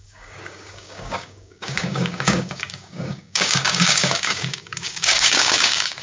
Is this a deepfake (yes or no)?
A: yes